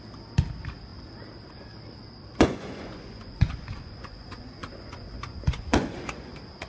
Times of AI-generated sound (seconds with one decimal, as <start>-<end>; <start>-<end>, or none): 2.3-6.3

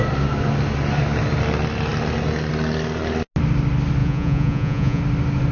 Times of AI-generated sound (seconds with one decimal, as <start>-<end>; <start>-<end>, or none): 4.0-5.0

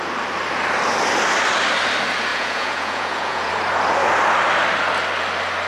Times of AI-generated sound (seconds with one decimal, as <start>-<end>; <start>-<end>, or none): 2.3-3.5

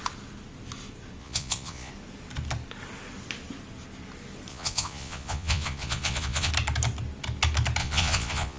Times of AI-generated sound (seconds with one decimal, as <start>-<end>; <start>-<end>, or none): 1.2-1.9; 4.5-6.5; 7.8-8.6

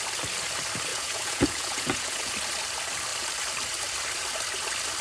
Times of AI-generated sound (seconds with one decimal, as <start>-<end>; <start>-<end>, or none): 0.9-2.3

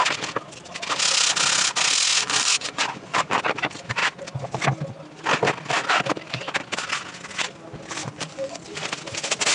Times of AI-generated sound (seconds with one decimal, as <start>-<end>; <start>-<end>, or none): 2.1-3.4; 8.0-8.6